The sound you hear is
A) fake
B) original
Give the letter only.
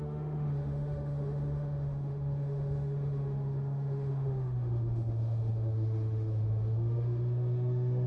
A